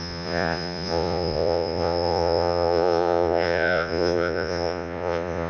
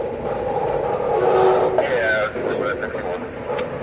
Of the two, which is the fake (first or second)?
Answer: first